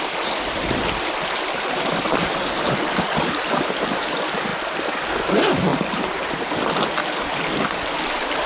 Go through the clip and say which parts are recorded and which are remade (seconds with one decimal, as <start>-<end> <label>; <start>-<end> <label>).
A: 0.0-8.5 recorded